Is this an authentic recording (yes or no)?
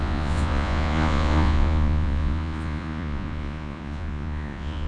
no